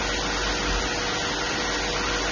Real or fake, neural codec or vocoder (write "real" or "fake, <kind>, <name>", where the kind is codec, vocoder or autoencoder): real